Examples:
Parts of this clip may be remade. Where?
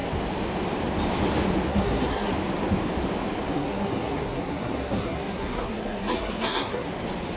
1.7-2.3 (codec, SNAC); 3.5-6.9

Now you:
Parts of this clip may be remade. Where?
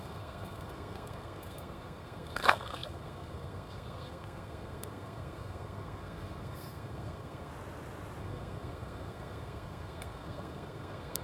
0.0-7.5 (codec, SNAC); 8.2-11.2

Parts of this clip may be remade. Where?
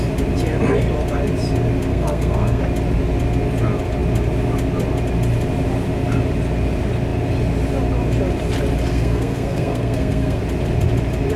1.9-2.6 (codec, SNAC); 8.9-10.4